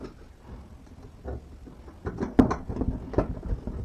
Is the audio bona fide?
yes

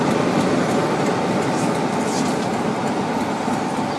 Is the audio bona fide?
yes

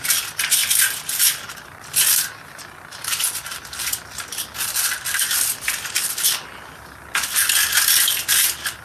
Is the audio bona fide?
yes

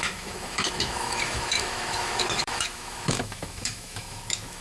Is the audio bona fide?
no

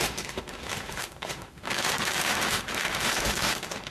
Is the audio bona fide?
no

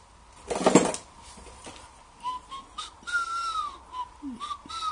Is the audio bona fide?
yes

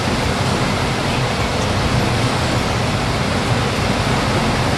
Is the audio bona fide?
yes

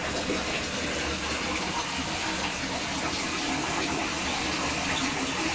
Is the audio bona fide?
yes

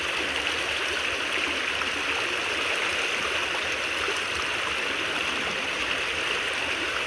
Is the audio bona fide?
yes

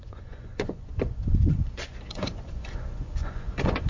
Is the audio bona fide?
no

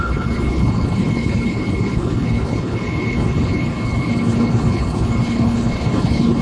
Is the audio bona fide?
no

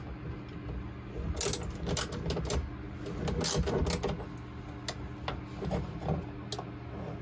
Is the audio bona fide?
yes